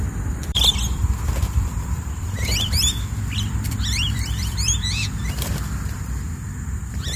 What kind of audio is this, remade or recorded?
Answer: remade